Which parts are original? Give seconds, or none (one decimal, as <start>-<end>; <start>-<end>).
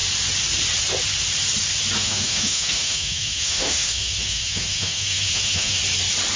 0.0-2.0; 5.8-6.4